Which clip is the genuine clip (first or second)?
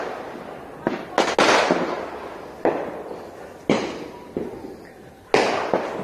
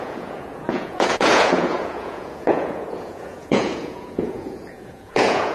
first